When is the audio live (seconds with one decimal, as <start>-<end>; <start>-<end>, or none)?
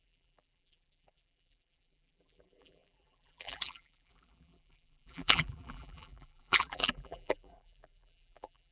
none